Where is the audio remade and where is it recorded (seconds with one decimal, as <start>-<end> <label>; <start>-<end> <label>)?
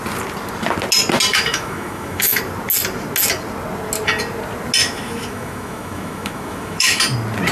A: 0.0-1.3 recorded; 1.3-2.4 remade; 2.4-4.8 recorded; 4.8-7.0 remade; 7.0-7.5 recorded